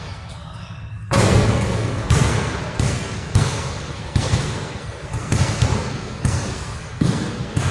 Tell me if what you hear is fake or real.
fake